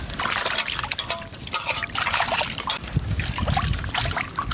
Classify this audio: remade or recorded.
recorded